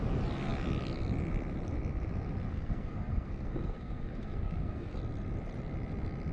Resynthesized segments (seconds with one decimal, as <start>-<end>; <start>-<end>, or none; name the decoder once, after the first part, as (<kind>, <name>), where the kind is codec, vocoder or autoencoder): 2.5-5.0 (codec, SNAC)